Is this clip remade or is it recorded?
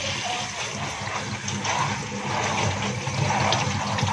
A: recorded